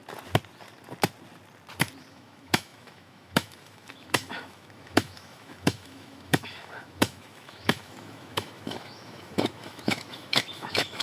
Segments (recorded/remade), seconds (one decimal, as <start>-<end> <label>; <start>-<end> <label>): 0.0-2.1 recorded; 2.1-11.0 remade